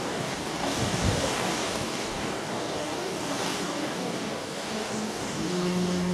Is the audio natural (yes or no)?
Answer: no